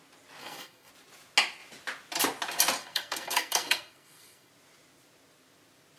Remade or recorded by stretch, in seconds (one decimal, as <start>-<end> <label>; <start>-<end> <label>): 0.0-0.4 recorded; 0.4-0.9 remade; 0.9-2.8 recorded; 2.8-4.5 remade; 4.5-6.0 recorded